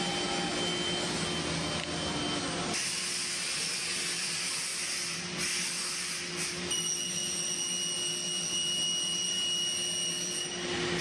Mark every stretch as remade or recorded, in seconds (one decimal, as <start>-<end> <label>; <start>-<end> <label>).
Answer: 0.0-11.0 recorded